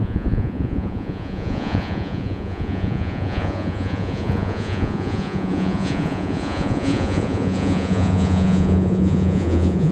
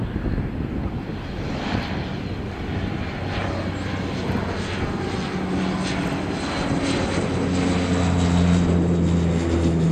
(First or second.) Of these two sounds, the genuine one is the second